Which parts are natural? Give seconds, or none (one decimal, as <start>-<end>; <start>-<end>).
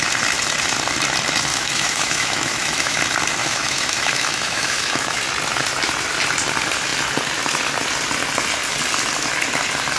0.0-1.5; 3.0-3.4; 5.2-10.0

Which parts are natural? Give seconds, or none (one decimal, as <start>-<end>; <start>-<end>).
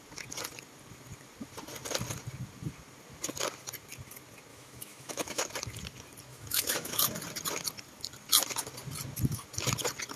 0.0-4.5; 5.4-6.3; 7.0-10.2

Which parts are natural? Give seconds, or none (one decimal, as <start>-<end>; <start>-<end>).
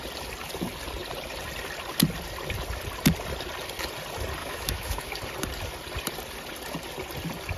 0.0-4.4; 5.1-7.6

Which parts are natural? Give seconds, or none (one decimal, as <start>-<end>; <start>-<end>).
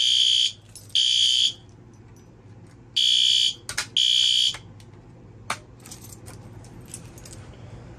0.0-8.0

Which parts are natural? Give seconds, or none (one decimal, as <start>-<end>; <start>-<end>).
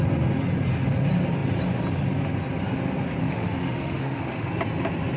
0.0-3.2; 4.5-5.2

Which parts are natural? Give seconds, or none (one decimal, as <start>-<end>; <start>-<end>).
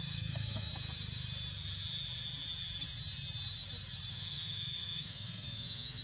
0.7-4.1